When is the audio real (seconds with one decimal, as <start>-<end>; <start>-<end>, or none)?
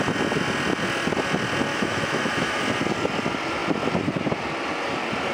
0.0-1.7; 2.6-5.3